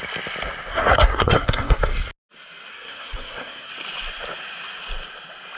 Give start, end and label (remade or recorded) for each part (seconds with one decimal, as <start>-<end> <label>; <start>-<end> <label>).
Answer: 0.0-0.7 recorded; 0.7-1.8 remade; 1.8-2.7 recorded; 2.7-3.7 remade; 3.7-5.6 recorded